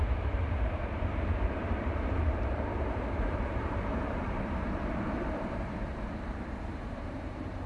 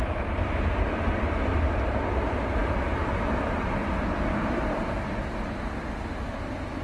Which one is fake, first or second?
first